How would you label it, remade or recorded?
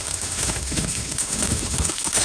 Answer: remade